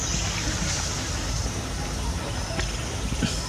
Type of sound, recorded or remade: recorded